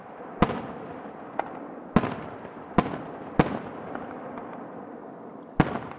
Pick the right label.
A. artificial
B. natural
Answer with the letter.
B